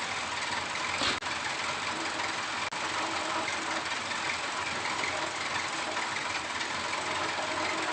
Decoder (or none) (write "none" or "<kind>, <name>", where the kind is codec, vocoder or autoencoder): none